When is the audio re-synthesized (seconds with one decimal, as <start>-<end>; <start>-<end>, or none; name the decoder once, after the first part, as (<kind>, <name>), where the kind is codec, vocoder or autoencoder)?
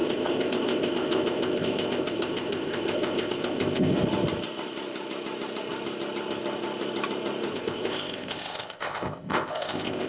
0.0-3.9 (codec, ZipCodec); 7.5-10.1